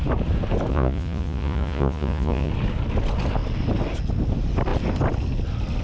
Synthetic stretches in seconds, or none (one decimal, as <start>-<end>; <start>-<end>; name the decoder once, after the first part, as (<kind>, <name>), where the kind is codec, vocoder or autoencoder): 0.7-2.5 (vocoder, Vocos)